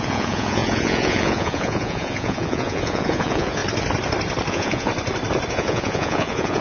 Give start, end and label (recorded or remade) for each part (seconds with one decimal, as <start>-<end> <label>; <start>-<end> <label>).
0.0-3.6 remade; 3.6-4.5 recorded; 4.5-4.9 remade; 4.9-5.5 recorded; 5.5-6.6 remade